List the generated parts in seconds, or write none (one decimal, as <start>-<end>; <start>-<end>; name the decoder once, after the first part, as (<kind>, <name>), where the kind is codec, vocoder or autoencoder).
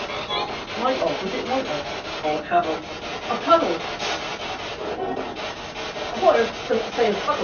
none